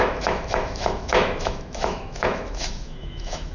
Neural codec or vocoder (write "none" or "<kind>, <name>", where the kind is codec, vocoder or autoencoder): autoencoder, DAC-VAE